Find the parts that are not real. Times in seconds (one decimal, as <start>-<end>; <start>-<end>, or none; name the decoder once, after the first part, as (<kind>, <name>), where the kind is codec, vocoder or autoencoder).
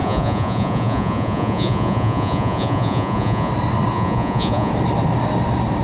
0.0-3.5 (vocoder, Vocos); 3.9-4.7